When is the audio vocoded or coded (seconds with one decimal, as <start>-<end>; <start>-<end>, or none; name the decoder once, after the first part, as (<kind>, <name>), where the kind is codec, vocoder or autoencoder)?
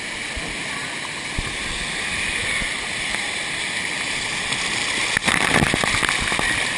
5.2-5.8 (vocoder, BigVGAN v2)